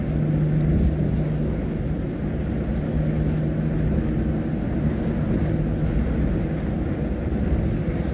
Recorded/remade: recorded